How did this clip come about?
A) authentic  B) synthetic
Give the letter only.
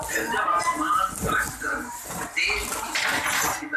A